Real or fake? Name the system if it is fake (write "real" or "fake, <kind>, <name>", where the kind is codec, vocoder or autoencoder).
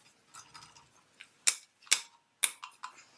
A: real